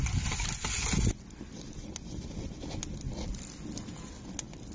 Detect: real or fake real